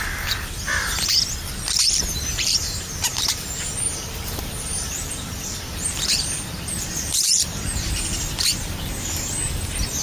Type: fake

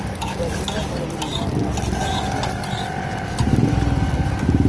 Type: real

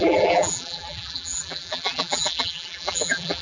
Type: fake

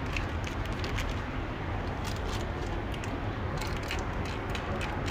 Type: real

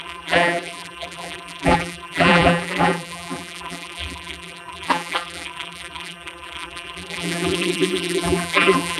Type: fake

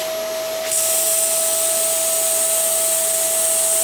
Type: real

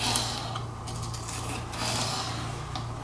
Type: real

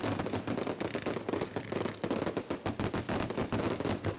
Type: real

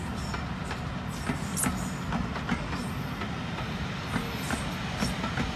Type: real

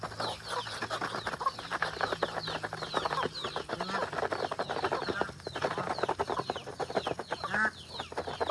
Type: real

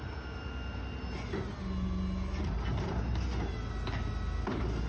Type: real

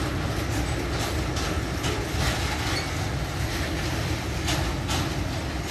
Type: real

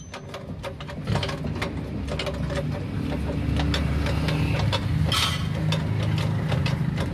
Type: real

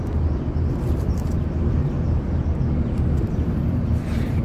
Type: fake